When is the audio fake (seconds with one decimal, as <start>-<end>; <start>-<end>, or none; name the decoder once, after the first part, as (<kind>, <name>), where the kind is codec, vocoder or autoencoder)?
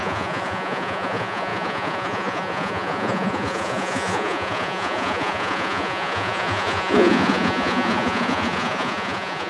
0.0-9.5 (vocoder, Vocos)